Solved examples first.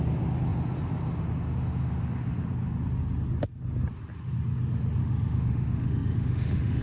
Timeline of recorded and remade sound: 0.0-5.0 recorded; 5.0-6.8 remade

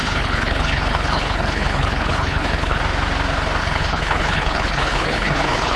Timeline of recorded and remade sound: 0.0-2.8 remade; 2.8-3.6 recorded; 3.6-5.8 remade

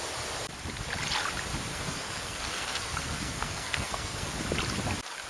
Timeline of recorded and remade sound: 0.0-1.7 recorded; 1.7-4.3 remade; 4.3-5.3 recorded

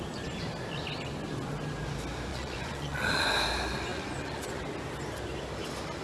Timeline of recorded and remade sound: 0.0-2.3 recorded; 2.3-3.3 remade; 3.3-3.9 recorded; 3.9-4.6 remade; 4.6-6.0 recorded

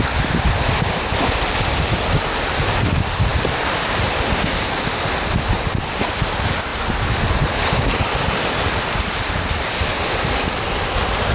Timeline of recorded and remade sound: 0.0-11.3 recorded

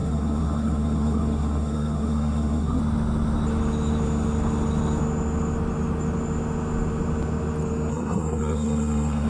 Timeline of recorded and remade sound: 0.0-2.8 remade; 2.8-7.9 recorded; 7.9-9.3 remade

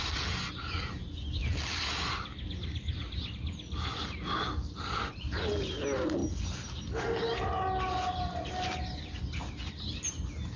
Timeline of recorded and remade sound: 0.0-10.6 recorded